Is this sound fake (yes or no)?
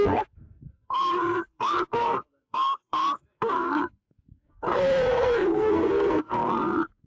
yes